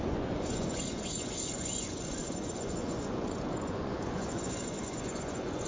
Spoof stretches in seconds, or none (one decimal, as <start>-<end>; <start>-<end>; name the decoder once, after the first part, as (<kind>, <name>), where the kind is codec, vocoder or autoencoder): 0.0-5.7 (vocoder, Vocos)